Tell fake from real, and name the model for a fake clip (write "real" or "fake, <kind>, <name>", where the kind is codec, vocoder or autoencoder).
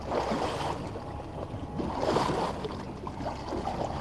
real